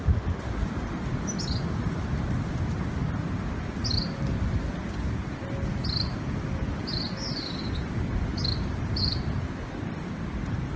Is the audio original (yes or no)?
yes